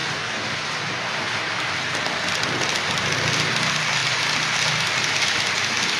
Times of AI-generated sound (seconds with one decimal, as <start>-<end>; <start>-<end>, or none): none